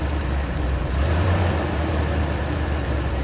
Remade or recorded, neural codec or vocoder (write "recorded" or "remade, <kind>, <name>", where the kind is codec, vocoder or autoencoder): remade, vocoder, BigVGAN v2